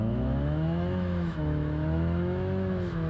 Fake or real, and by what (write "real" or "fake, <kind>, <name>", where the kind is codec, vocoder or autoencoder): fake, autoencoder, DAC-VAE